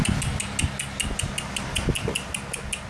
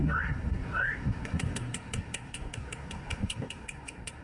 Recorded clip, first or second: first